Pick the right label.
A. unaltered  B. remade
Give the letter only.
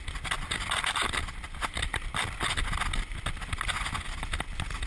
A